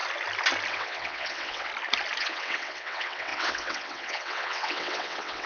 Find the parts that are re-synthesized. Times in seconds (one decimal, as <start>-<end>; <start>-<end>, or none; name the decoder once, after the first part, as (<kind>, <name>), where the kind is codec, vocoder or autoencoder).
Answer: 0.7-1.7 (vocoder, WaveNeXt); 2.2-5.5